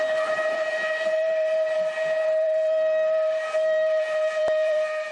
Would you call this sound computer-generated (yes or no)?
yes